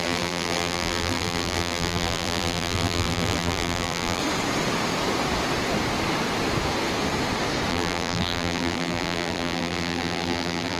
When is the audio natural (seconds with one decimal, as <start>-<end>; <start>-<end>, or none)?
4.2-7.7